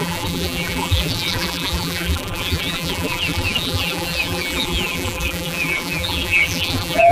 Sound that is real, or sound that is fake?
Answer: fake